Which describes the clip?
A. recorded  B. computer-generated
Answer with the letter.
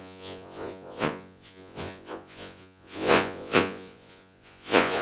B